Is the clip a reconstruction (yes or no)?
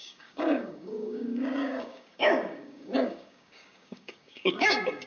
yes